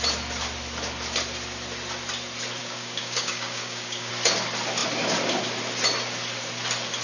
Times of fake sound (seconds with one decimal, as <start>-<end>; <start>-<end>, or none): 2.6-4.1